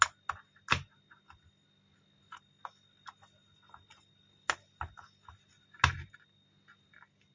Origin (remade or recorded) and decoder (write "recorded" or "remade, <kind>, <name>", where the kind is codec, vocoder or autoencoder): recorded